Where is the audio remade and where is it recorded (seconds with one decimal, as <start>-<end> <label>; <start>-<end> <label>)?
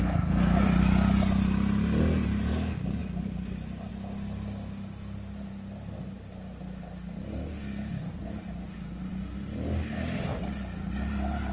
0.0-11.5 recorded